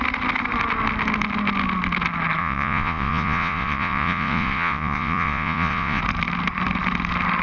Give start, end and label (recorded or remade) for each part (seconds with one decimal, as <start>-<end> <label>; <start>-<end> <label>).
0.0-2.4 recorded; 2.4-6.0 remade; 6.0-7.4 recorded